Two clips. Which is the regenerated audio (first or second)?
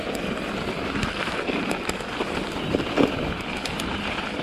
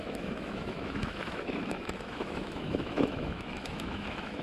second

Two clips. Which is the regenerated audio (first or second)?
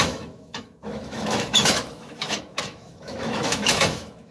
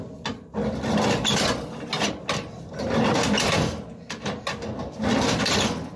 first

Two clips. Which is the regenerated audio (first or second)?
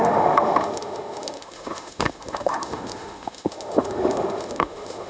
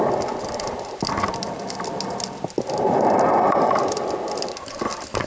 first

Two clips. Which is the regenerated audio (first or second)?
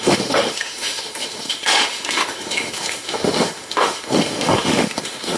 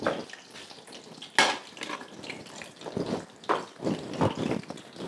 first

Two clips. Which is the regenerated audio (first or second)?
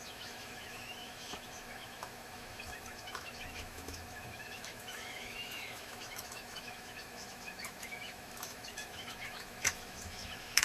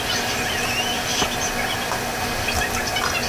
first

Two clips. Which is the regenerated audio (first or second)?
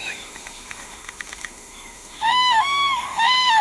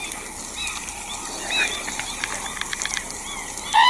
first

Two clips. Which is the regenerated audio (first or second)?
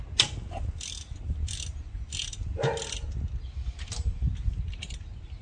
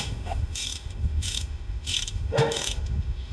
second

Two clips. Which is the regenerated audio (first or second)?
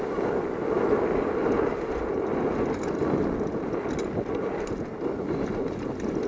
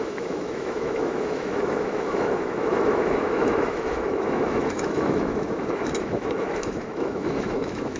second